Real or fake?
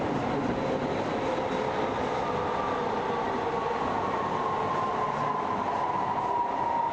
real